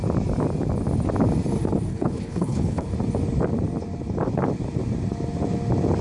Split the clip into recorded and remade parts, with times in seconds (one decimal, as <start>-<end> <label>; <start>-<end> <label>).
0.0-1.9 recorded; 1.9-2.9 remade; 2.9-6.0 recorded